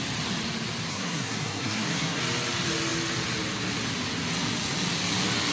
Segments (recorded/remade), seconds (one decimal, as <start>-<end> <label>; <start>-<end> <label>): 0.0-0.9 recorded; 0.9-2.2 remade; 2.2-5.5 recorded